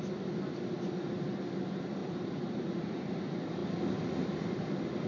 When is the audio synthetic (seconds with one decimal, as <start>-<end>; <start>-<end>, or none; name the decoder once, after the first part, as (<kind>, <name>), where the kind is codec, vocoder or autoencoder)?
2.0-3.2 (vocoder, BigVGAN v2)